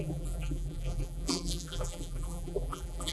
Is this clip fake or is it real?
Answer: fake